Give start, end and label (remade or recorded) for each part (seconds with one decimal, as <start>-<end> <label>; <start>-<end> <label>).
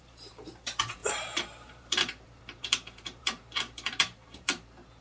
0.0-5.0 remade